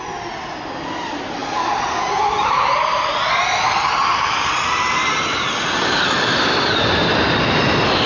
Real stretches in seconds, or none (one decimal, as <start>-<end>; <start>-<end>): 0.0-8.1